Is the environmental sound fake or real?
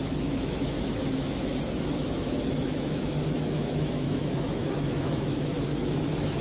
fake